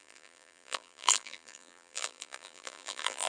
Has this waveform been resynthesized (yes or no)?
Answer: yes